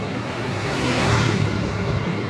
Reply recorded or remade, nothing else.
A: remade